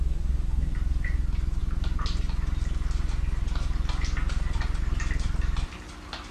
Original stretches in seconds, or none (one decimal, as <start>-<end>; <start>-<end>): 0.0-6.3